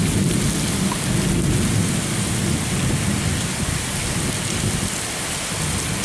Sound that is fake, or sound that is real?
real